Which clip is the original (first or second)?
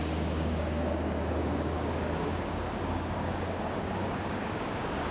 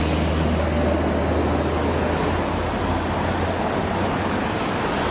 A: second